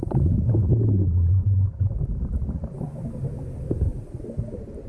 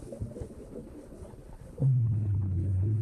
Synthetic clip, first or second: second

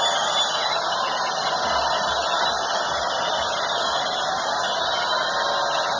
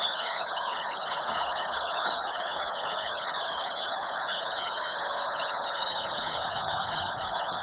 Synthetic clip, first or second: second